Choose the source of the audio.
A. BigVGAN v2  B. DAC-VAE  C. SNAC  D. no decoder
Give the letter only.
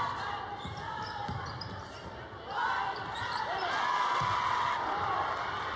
A